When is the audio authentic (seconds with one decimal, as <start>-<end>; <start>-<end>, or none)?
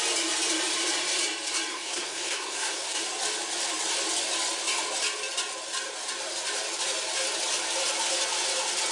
0.0-1.7; 3.0-8.9